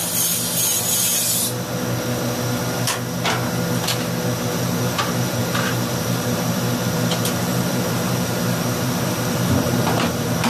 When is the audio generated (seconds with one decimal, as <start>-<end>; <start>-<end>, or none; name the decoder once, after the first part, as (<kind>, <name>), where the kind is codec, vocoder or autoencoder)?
4.5-10.5 (vocoder, BigVGAN v2)